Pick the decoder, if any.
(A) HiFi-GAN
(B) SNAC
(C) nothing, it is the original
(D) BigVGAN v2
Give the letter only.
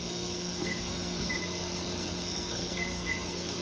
B